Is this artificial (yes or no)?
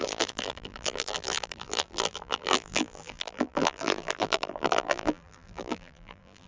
yes